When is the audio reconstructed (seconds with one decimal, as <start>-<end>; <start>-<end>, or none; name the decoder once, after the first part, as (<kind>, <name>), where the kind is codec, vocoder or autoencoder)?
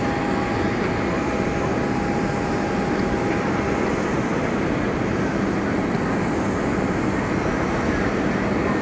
none